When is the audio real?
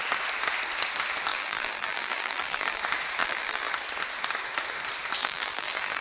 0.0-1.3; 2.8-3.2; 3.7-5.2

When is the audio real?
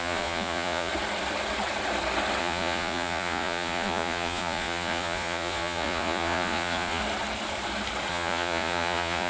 0.9-2.4; 7.0-8.1